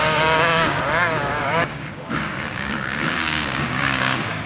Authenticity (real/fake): fake